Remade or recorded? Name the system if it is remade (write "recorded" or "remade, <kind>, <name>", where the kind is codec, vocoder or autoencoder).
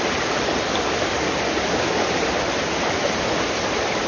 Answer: recorded